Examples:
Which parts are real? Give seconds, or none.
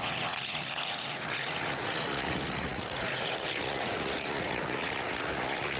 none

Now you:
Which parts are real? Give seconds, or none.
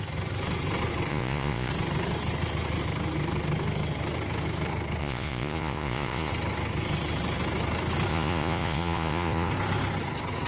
0.0-1.1; 1.7-5.0; 6.3-8.1; 9.5-10.5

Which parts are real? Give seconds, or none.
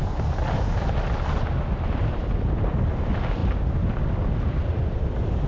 0.0-5.5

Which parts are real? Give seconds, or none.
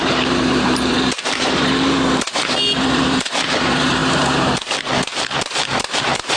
none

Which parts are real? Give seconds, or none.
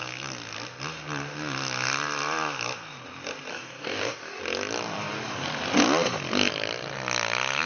0.0-3.5; 4.4-7.7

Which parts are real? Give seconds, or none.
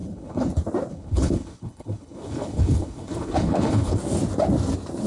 0.5-0.9; 4.0-5.1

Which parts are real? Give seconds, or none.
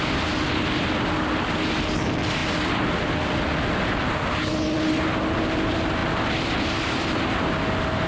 0.0-8.1